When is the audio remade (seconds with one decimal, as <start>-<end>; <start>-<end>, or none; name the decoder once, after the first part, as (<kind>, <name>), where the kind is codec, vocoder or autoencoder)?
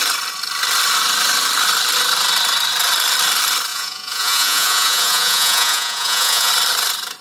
3.7-6.5 (vocoder, Vocos)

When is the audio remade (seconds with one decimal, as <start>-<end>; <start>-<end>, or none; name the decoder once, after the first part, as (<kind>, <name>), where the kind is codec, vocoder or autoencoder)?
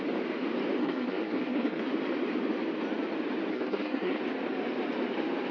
0.8-1.8 (codec, SNAC); 3.5-4.2